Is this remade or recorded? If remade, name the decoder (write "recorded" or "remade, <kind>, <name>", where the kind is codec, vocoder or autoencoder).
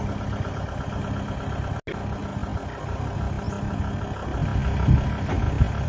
recorded